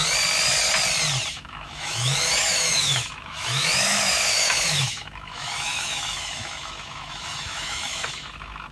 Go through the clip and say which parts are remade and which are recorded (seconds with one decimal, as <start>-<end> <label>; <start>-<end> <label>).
0.0-1.3 recorded; 1.3-8.7 remade